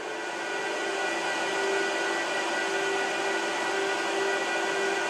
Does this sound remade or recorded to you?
recorded